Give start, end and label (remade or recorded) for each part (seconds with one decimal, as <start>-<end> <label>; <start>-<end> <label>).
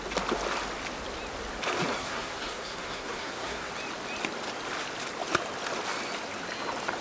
0.0-2.0 recorded; 2.0-3.7 remade; 3.7-7.0 recorded